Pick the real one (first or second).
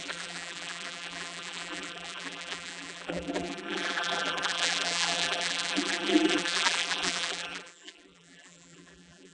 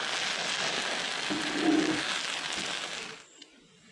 second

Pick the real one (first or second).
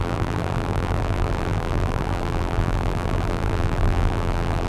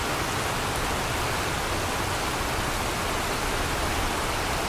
second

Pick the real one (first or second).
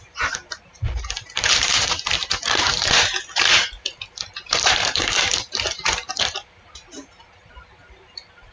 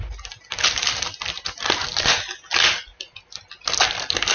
second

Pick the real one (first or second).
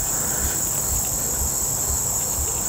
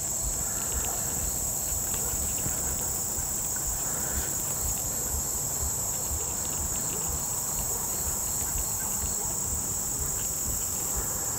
first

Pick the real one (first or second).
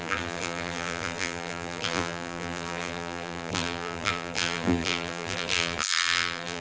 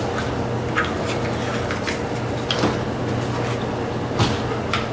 second